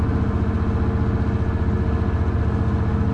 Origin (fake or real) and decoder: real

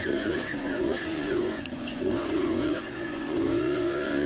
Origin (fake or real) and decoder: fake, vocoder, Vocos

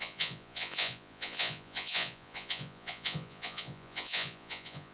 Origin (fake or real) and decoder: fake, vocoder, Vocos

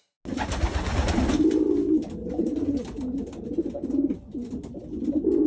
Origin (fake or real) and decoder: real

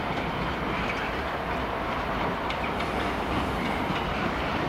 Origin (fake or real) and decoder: real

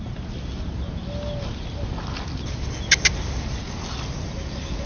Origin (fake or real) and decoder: real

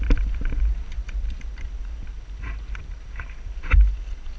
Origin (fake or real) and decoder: real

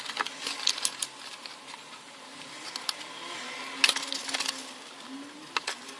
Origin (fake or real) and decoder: real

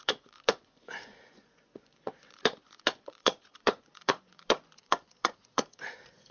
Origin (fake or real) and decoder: fake, vocoder, Vocos